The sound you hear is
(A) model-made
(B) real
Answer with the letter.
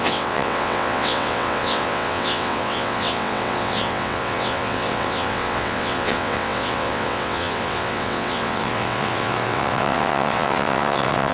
A